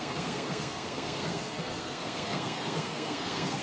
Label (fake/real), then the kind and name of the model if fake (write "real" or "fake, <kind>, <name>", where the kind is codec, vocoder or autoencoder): fake, codec, SNAC